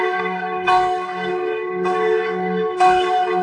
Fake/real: fake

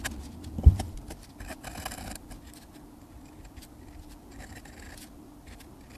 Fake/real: real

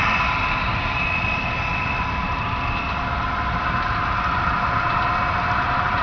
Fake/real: real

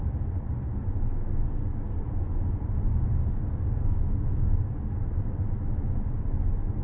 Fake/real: real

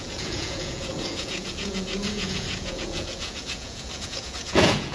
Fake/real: fake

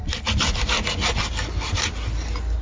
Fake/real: real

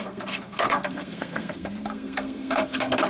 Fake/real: fake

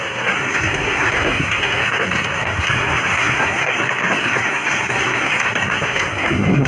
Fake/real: fake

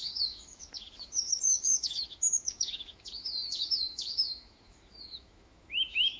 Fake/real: fake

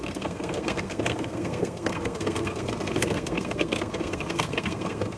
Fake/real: fake